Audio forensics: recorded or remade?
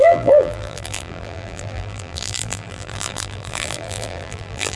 remade